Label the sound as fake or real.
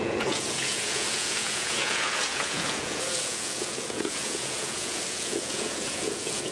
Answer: fake